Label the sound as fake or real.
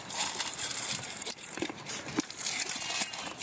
fake